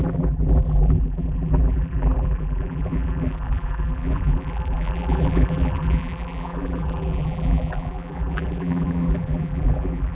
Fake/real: fake